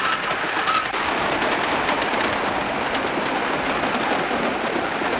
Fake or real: real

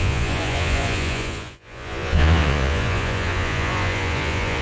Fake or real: fake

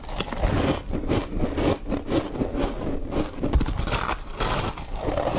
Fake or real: real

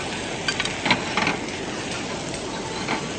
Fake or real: real